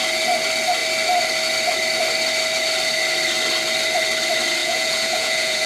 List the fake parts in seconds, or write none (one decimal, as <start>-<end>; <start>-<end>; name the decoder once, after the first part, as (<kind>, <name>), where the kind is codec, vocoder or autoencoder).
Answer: 4.6-5.7 (vocoder, Vocos)